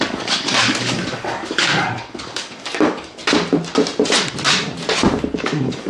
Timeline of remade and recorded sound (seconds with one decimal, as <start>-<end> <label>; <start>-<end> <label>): 0.0-3.2 remade; 3.2-5.2 recorded; 5.2-5.9 remade